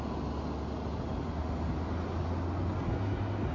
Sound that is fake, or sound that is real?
real